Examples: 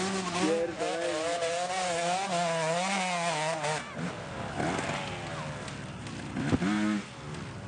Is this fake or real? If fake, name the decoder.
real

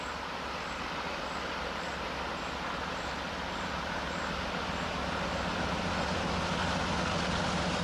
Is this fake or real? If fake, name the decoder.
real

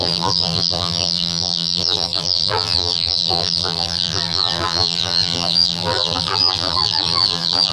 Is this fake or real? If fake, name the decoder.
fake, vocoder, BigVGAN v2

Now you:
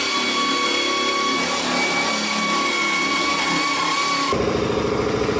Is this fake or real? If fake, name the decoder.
real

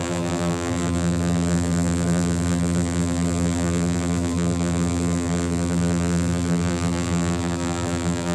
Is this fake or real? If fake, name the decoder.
fake, vocoder, BigVGAN v2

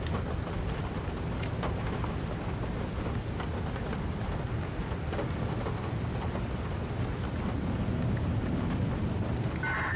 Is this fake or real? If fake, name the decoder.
real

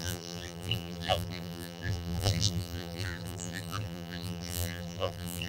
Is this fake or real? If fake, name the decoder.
fake, vocoder, BigVGAN v2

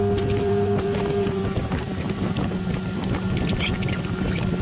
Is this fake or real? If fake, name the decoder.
fake, vocoder, BigVGAN v2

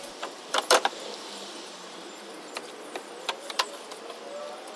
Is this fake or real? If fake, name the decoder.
fake, vocoder, BigVGAN v2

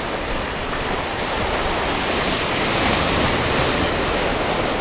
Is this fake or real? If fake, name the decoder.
fake, vocoder, BigVGAN v2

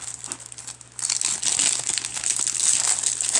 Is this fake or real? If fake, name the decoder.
real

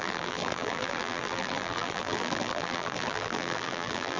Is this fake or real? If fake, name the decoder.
fake, vocoder, BigVGAN v2